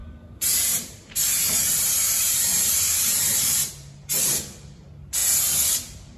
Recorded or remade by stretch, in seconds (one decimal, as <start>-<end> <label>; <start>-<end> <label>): 0.0-3.7 remade; 3.7-6.2 recorded